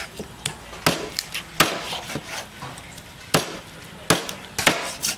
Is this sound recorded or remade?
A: recorded